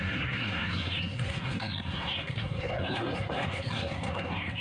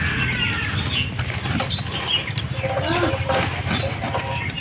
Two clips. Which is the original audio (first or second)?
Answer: second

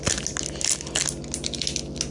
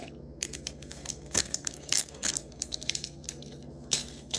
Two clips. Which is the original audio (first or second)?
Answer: first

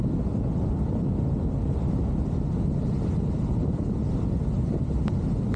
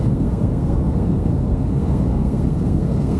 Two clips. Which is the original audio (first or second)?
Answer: first